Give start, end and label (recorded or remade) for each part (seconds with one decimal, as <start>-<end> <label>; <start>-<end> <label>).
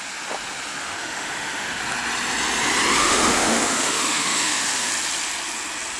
0.0-0.8 recorded; 0.8-1.8 remade; 1.8-3.0 recorded; 3.0-4.9 remade; 4.9-6.0 recorded